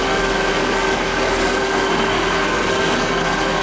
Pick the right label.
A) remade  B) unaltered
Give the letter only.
A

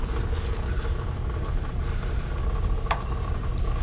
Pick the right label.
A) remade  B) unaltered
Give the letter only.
B